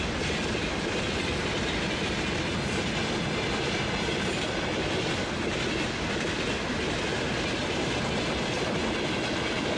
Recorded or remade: recorded